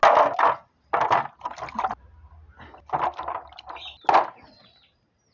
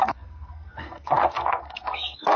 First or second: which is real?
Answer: first